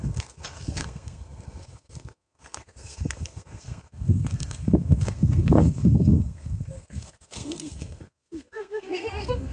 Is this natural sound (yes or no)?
no